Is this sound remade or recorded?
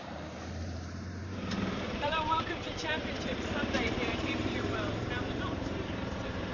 remade